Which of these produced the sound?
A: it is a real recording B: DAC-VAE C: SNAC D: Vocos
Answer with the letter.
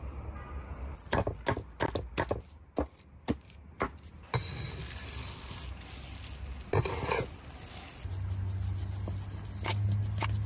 A